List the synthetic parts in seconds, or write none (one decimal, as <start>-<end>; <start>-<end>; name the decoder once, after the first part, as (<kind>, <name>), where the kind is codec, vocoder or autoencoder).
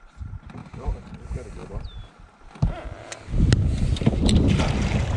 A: 0.6-1.1 (vocoder, BigVGAN v2)